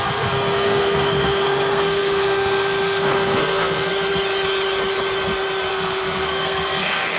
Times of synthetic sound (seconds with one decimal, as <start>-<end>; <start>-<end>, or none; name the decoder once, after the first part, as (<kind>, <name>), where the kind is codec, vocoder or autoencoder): 0.0-3.9 (codec, SNAC); 5.7-7.2